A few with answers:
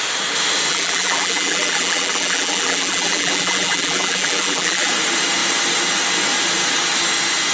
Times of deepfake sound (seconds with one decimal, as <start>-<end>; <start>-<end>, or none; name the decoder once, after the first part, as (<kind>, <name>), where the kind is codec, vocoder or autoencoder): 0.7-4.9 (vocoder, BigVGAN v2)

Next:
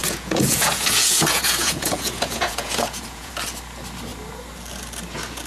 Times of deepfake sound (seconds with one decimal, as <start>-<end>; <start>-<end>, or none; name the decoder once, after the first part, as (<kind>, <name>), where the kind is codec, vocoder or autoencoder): 0.0-3.3 (vocoder, Vocos)

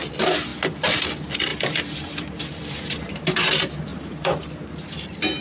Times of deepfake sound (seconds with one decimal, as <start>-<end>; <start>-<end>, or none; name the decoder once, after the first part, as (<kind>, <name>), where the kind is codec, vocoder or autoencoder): 1.5-3.5 (vocoder, BigVGAN v2); 3.9-4.5

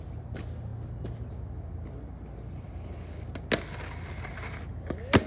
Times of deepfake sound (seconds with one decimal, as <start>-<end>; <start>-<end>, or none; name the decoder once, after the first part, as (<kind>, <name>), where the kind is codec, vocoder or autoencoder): none

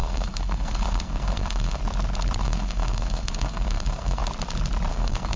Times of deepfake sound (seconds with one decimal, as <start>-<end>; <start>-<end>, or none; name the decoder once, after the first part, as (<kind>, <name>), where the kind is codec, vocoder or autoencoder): 0.0-1.8 (codec, SNAC); 2.4-4.2; 4.9-5.4